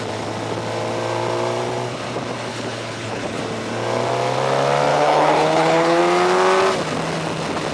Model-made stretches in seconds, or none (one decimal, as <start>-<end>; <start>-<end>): 2.5-3.4; 4.9-6.0